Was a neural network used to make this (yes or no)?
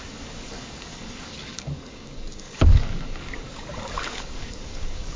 yes